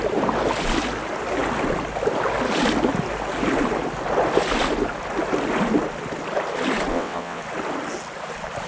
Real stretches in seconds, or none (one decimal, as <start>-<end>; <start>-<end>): 0.0-6.9; 7.4-8.7